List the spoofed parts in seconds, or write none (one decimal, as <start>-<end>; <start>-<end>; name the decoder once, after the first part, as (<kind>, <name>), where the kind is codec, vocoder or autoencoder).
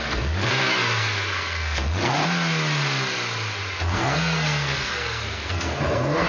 0.0-2.2 (codec, SNAC); 3.8-6.3